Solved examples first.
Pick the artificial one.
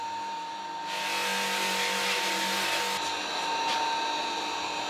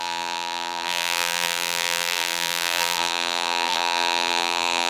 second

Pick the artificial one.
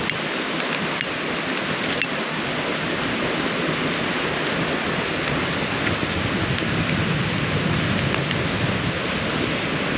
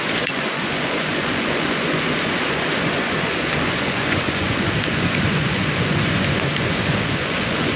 second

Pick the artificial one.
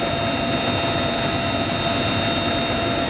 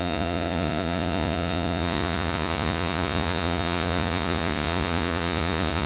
second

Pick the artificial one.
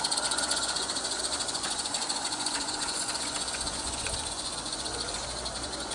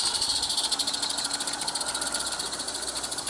first